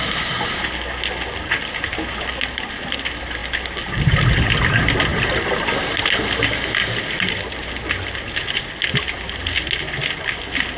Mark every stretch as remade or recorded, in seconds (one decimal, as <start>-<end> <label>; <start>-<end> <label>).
0.0-10.8 recorded